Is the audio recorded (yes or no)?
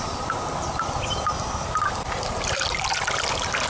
no